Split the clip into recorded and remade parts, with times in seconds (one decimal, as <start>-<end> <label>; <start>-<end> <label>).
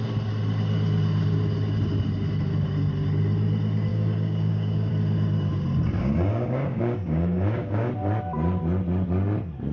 0.0-3.9 recorded; 3.9-4.9 remade; 4.9-6.0 recorded; 6.0-7.9 remade; 7.9-9.7 recorded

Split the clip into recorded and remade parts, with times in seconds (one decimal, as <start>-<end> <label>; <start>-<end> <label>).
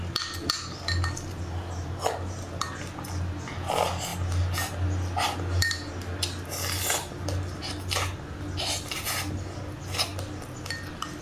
0.0-11.2 recorded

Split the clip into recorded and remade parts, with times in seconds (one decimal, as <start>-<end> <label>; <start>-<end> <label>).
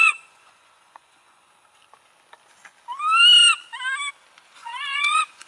0.0-1.5 remade; 1.5-4.6 recorded; 4.6-5.5 remade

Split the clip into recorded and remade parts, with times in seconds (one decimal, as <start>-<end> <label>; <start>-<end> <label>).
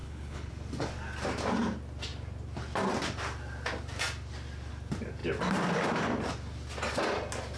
0.0-0.5 remade; 0.5-7.6 recorded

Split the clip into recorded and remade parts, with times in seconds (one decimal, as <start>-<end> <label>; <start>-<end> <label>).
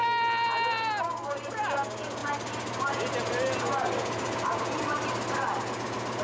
0.0-6.2 recorded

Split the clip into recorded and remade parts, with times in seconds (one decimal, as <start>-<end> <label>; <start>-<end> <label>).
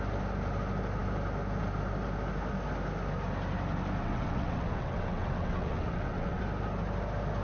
0.0-4.0 recorded; 4.0-6.4 remade; 6.4-7.4 recorded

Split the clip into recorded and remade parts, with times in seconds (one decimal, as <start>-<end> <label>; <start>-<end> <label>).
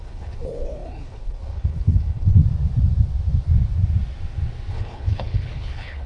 0.0-2.4 remade; 2.4-4.7 recorded; 4.7-6.1 remade